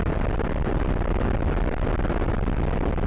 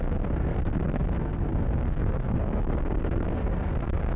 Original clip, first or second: first